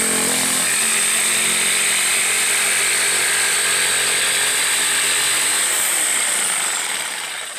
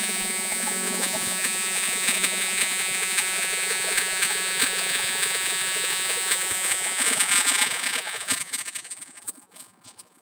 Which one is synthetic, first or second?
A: second